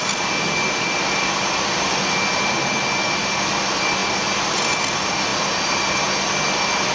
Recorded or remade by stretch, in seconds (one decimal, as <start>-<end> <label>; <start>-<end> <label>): 0.0-6.9 recorded